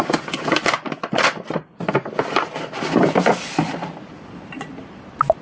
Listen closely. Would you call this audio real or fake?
real